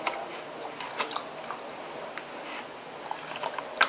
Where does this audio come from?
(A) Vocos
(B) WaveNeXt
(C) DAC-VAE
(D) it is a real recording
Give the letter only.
D